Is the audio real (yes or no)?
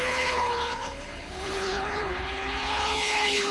no